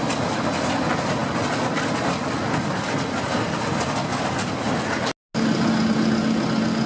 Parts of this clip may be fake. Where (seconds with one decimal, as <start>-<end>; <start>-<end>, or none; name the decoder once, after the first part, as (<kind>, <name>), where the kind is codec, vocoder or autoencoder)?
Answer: none

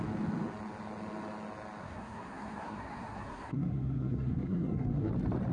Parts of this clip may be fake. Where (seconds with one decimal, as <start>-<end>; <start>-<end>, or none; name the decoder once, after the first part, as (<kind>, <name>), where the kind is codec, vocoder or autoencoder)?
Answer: 1.8-5.1 (codec, SNAC)

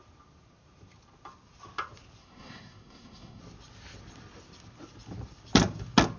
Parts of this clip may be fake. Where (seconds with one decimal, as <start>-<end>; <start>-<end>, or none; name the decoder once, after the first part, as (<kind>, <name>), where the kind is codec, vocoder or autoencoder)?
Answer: 2.2-3.4 (codec, SNAC)

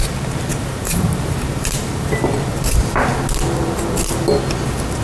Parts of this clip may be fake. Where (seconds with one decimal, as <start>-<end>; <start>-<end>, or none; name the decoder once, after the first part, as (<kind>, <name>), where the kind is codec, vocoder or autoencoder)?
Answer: 0.5-2.2 (vocoder, BigVGAN v2)